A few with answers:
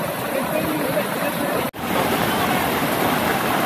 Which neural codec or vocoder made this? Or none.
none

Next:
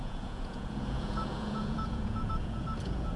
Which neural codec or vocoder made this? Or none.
vocoder, Vocos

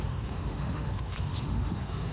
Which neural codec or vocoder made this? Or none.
autoencoder, DAC-VAE